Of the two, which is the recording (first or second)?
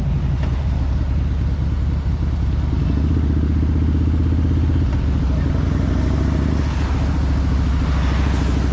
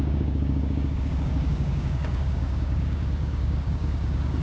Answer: first